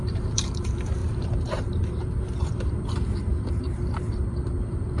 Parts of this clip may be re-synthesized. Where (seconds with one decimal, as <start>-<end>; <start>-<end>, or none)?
0.0-5.0